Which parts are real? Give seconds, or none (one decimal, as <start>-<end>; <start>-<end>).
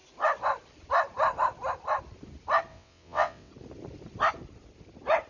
0.0-2.7; 3.5-5.3